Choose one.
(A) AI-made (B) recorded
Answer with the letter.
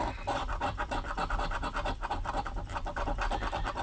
A